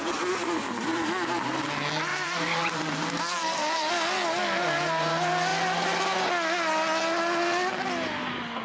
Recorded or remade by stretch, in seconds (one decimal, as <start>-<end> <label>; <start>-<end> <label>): 0.0-2.1 recorded; 2.1-3.9 remade; 3.9-8.6 recorded